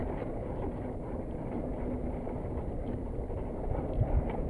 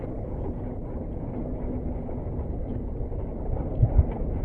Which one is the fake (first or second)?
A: first